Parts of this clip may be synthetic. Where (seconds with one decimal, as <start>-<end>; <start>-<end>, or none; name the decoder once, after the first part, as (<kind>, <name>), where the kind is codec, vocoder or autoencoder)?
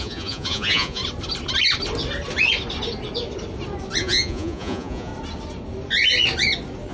0.0-1.0 (vocoder, Vocos); 4.0-5.1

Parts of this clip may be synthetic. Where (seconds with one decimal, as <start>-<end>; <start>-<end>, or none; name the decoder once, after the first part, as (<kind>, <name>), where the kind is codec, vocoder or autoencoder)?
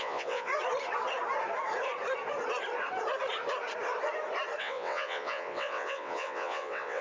0.0-0.5 (vocoder, WaveNeXt); 4.6-7.0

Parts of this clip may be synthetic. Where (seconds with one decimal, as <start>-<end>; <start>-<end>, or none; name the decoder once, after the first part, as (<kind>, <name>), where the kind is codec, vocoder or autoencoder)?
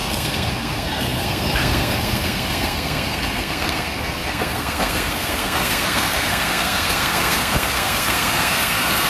0.0-9.1 (codec, SNAC)